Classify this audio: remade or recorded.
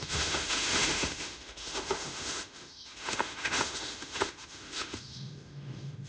remade